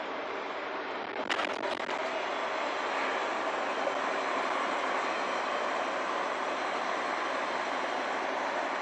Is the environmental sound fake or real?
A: real